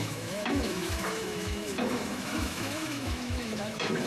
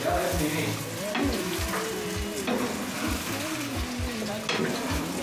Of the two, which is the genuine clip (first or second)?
second